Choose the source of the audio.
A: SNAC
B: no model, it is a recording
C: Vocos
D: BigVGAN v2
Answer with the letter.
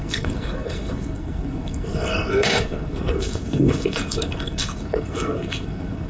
A